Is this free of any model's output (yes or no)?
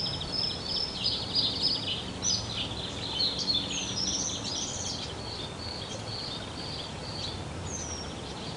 yes